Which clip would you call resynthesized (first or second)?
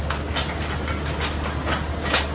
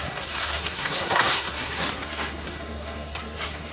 second